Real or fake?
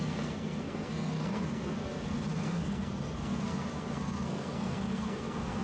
fake